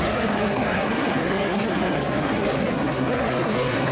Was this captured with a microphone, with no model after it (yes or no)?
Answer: no